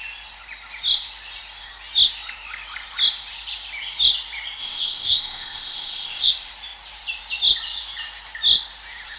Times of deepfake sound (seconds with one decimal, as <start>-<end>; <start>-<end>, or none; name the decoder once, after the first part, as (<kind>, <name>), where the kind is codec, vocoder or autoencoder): 4.6-6.3 (codec, ZipCodec)